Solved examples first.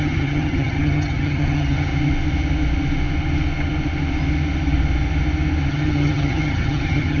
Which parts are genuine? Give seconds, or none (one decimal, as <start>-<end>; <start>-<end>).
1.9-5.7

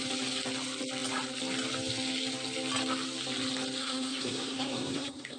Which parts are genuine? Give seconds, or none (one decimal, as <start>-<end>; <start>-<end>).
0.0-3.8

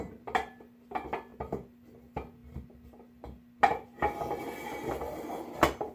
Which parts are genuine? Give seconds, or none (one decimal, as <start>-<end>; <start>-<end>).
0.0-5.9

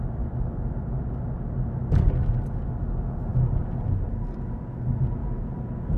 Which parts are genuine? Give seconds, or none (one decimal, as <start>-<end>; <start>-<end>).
0.0-5.2

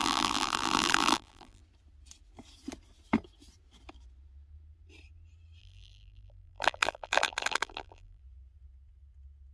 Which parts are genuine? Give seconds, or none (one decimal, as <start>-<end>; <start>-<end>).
1.6-5.6; 8.2-9.5